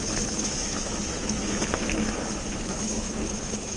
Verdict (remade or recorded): remade